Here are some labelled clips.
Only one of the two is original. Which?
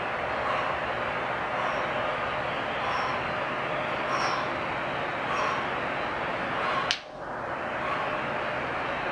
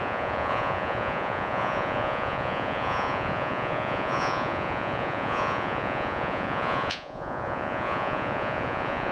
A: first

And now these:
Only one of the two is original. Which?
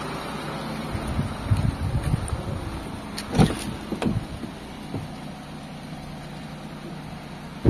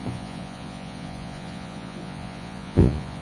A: first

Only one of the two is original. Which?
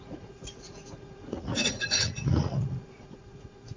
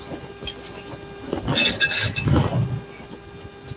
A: second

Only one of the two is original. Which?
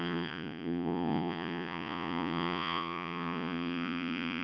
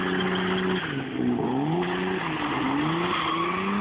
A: second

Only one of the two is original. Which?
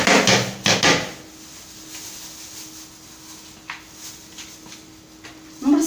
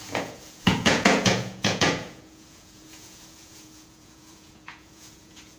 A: first